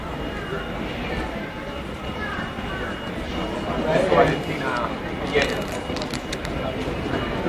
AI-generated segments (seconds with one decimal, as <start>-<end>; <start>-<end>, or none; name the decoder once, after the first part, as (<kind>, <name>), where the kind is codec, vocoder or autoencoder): 2.0-2.7 (vocoder, BigVGAN v2)